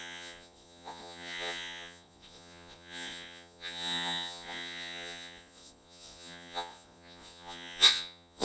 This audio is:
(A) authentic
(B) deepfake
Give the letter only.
B